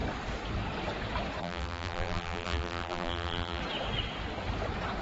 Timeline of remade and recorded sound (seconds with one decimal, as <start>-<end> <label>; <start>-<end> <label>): 0.0-1.4 recorded; 1.4-3.6 remade; 3.6-5.0 recorded